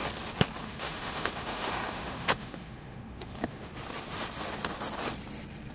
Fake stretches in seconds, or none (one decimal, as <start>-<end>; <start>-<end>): 0.6-3.7

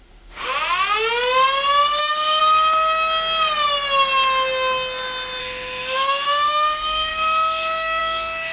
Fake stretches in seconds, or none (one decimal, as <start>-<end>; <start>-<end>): 0.0-0.5; 2.0-2.4; 5.4-8.5

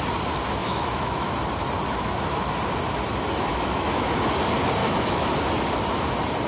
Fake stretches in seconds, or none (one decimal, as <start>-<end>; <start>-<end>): 0.6-1.3; 3.5-4.1; 4.8-5.3